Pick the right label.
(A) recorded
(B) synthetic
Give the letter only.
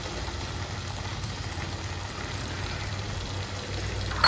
A